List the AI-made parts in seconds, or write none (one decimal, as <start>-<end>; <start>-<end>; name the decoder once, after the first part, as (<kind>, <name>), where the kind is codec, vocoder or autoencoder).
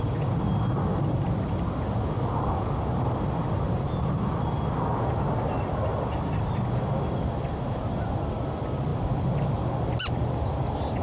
5.9-6.5 (vocoder, BigVGAN v2)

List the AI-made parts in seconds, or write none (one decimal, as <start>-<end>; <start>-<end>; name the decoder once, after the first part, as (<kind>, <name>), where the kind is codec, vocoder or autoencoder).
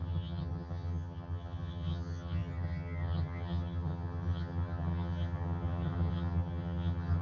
0.0-7.2 (vocoder, HiFi-GAN)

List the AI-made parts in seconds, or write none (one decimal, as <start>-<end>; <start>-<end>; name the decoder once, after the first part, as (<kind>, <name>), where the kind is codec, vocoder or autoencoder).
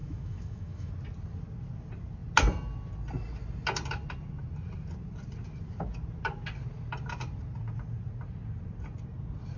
0.0-0.9 (autoencoder, DAC-VAE)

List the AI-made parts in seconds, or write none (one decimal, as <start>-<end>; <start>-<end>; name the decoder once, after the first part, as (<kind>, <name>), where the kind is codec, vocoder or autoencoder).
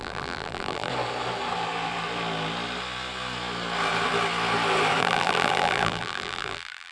0.0-0.9 (vocoder, BigVGAN v2); 5.0-6.9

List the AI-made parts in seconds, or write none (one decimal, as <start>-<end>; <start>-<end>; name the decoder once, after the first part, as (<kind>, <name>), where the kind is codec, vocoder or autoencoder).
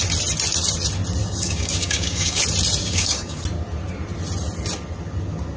1.2-2.4 (codec, DAC); 2.8-3.4